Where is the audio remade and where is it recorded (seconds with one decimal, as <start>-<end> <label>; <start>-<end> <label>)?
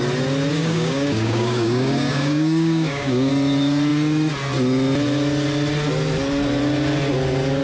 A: 0.0-0.5 recorded; 0.5-3.3 remade; 3.3-7.6 recorded